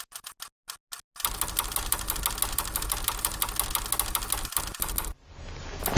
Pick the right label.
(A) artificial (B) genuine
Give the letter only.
B